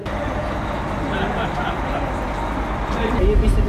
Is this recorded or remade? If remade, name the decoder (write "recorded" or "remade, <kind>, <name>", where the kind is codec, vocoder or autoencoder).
recorded